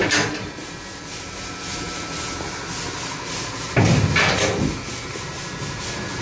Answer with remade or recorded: recorded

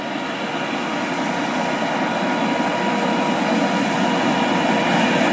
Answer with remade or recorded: recorded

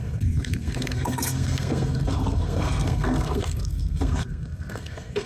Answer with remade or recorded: remade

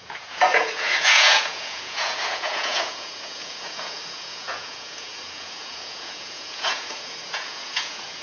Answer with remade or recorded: remade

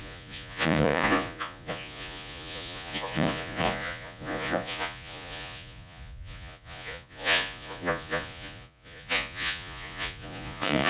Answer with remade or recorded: remade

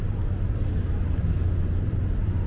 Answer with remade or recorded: recorded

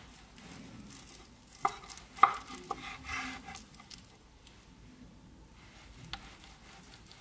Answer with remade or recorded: recorded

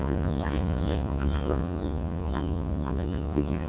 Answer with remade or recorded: remade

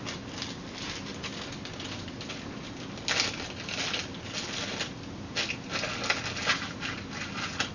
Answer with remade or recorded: recorded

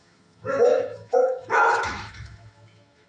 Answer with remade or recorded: remade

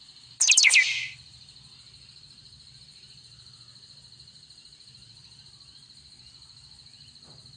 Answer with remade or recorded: recorded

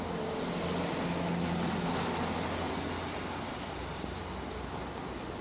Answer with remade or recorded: recorded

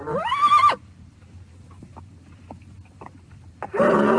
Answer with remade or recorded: remade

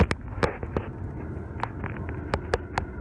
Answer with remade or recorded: recorded